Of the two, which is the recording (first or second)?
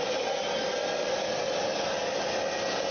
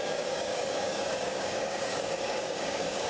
first